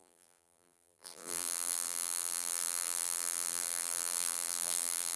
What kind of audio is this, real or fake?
fake